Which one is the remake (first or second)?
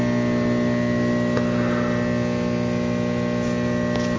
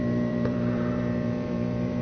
second